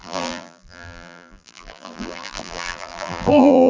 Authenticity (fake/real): fake